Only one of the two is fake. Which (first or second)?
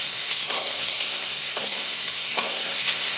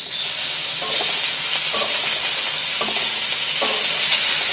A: first